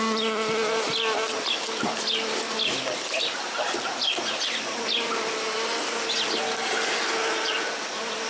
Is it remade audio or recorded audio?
recorded